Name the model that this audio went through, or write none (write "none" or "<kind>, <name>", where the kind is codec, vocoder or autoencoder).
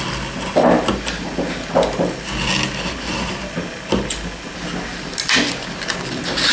none